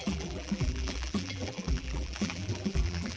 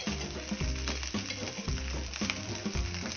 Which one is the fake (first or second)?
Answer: first